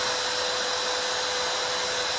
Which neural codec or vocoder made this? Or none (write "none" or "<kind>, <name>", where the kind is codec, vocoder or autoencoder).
none